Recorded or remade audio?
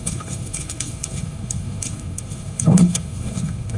remade